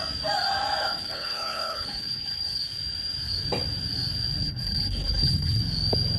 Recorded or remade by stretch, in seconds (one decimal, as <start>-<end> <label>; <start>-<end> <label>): 0.0-0.8 recorded; 0.8-2.6 remade; 2.6-4.4 recorded; 4.4-5.6 remade; 5.6-6.2 recorded